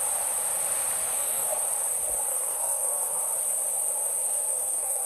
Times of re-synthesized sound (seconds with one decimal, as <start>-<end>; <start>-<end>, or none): 1.0-1.6; 2.3-3.2; 4.2-5.1